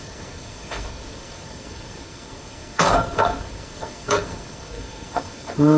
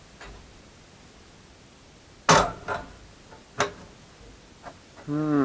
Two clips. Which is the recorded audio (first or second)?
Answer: second